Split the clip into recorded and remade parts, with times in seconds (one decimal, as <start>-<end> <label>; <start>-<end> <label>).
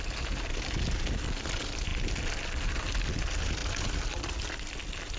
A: 0.0-5.2 recorded